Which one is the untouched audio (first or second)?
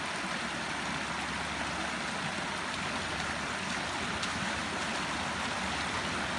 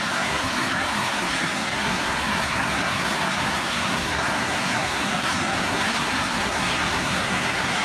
first